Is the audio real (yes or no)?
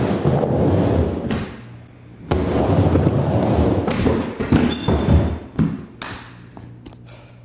yes